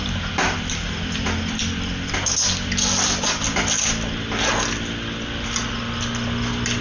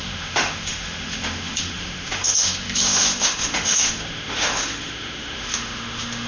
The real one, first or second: first